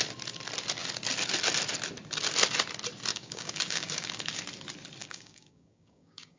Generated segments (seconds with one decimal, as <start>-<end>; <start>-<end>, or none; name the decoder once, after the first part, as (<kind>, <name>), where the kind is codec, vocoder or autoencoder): 3.1-4.4 (codec, DAC); 5.0-6.4